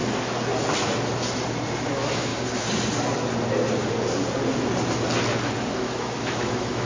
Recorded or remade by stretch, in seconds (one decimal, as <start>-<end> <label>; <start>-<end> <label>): 0.0-1.9 recorded; 1.9-2.3 remade; 2.3-5.7 recorded; 5.7-6.9 remade